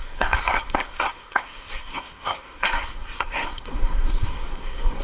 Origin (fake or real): fake